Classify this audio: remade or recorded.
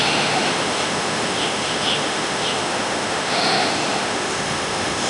remade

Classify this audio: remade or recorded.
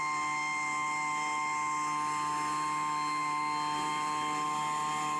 recorded